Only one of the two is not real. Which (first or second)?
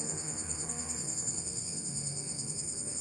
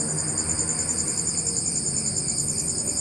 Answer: first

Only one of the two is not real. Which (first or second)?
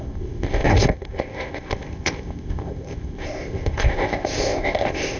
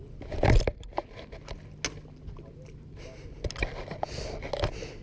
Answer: first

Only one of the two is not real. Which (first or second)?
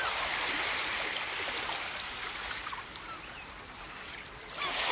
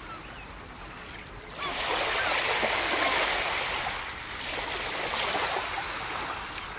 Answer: first